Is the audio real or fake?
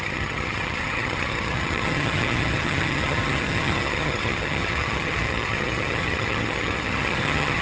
fake